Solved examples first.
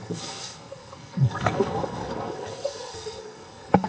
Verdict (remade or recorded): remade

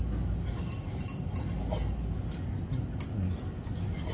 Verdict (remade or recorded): recorded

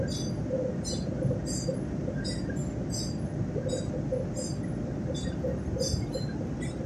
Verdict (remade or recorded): recorded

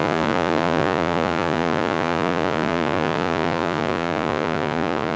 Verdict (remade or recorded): remade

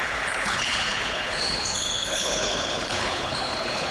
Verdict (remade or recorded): remade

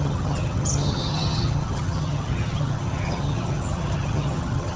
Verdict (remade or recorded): remade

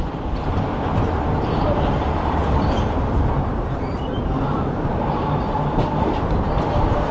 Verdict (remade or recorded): remade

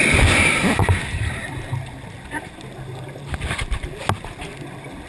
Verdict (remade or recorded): recorded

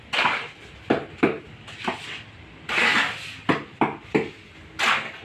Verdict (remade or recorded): recorded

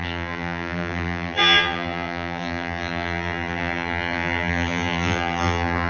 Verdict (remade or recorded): remade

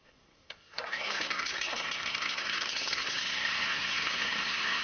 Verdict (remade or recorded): remade